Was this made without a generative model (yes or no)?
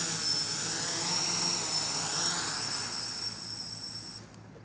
yes